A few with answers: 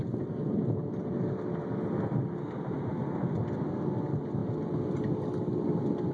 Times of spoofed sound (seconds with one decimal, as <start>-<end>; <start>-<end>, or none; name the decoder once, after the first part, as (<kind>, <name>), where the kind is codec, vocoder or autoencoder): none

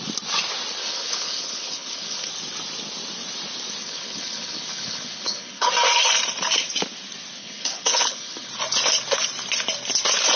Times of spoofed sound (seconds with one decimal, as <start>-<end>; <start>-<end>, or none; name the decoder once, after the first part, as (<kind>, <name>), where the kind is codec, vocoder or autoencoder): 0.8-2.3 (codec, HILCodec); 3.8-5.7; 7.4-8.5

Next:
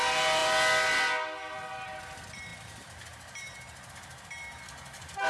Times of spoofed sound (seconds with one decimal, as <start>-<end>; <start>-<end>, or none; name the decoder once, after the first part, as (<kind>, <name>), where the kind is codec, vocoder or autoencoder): none